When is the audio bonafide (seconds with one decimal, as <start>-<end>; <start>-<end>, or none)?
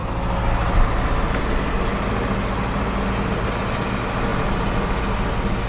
0.0-5.7